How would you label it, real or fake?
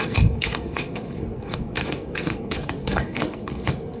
fake